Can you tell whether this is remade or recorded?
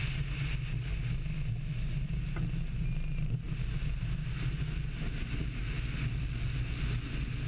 recorded